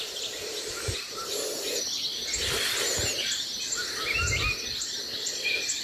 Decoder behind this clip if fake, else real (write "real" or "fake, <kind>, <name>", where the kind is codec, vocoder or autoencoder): real